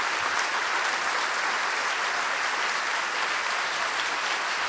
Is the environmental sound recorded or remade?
recorded